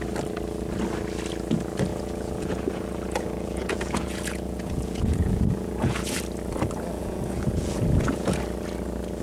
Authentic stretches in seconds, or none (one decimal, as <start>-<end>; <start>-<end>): 0.0-1.9; 6.2-7.0; 8.4-9.2